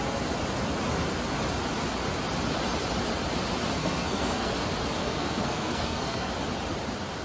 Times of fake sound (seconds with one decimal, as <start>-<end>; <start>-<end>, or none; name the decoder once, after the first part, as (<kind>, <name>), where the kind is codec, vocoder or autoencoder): 3.8-4.5 (codec, SNAC); 5.0-6.3